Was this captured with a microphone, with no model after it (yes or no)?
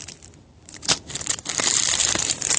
no